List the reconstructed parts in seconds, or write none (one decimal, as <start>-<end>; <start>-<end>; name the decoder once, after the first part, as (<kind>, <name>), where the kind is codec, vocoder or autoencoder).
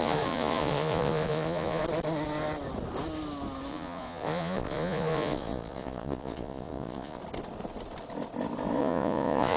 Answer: 0.0-1.8 (vocoder, Vocos); 3.7-7.2; 8.8-9.6